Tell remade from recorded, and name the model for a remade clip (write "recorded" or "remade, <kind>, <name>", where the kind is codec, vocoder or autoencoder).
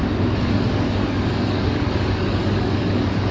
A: remade, codec, DAC